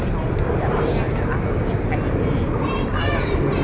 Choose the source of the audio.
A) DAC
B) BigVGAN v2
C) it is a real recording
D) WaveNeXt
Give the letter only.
C